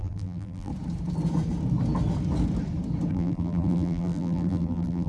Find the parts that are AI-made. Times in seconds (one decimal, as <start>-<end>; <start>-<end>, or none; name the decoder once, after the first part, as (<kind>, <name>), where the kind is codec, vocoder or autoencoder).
0.0-0.7 (vocoder, BigVGAN v2); 3.1-5.1